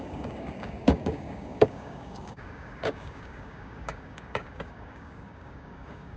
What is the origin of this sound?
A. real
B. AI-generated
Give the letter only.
B